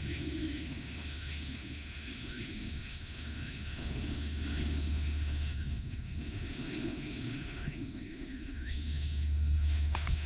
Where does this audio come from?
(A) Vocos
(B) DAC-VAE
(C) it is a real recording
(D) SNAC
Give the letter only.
B